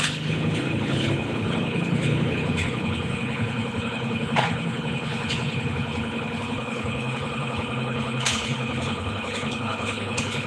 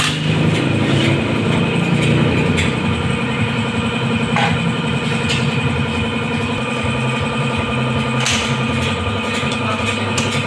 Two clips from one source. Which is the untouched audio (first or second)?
second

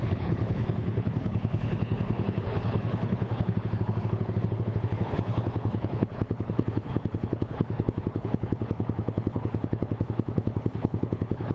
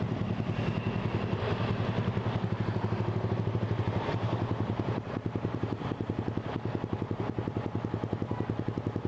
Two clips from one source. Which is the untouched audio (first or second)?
second